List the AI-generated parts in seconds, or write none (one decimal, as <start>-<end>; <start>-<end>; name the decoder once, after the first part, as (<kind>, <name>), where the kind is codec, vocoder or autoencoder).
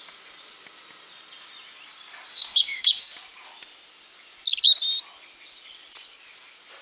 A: 2.3-3.1 (autoencoder, DAC-VAE)